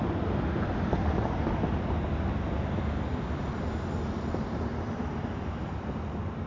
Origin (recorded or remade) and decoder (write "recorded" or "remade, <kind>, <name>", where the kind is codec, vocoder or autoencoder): recorded